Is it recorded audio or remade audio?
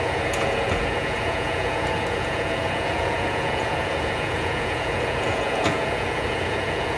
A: remade